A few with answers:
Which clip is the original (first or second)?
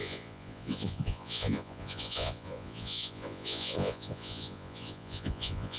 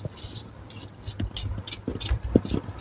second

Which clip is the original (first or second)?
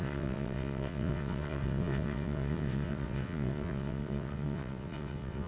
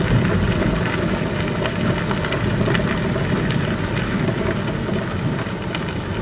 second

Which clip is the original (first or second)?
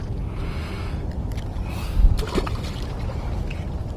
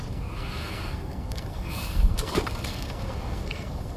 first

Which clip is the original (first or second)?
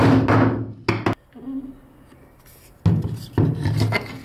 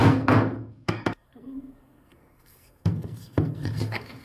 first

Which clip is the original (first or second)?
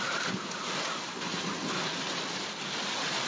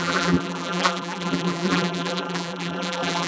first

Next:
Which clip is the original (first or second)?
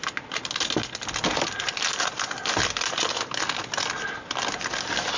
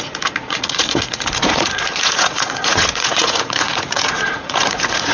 first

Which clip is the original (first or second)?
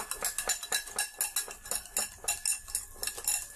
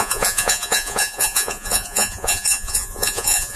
first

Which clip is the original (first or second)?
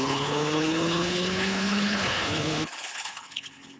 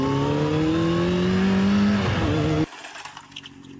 second